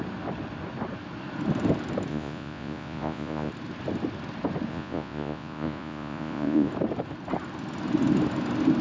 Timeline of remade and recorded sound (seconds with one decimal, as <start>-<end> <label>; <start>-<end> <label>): 0.0-2.1 recorded; 2.1-3.5 remade; 3.5-4.7 recorded; 4.7-6.7 remade; 6.7-8.8 recorded